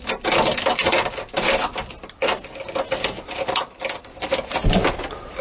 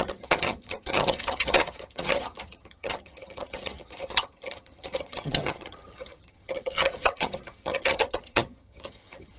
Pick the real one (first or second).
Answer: first